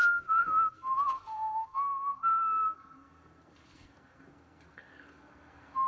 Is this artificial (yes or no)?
yes